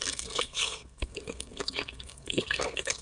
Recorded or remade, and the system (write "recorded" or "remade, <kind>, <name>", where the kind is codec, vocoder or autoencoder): remade, codec, SNAC